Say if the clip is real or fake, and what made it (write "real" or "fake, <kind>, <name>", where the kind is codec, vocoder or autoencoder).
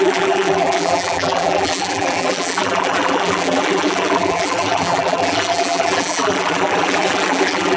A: fake, vocoder, BigVGAN v2